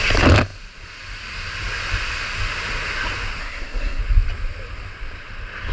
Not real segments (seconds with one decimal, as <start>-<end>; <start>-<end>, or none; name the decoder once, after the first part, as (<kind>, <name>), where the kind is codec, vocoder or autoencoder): 3.4-4.0 (codec, SNAC)